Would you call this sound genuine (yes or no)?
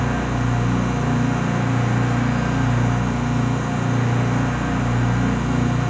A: yes